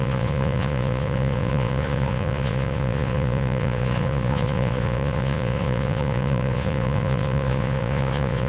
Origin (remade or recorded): remade